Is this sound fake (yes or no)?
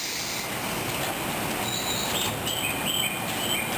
no